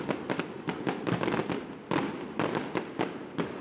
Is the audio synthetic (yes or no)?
no